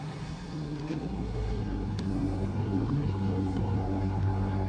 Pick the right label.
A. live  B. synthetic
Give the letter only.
B